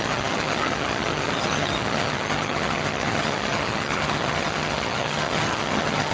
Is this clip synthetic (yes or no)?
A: yes